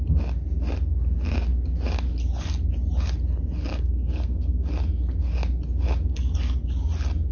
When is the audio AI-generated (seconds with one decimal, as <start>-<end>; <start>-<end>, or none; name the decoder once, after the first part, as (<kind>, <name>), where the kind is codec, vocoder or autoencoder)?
3.7-4.7 (codec, SNAC)